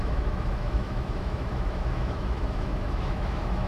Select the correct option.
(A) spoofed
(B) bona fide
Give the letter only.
A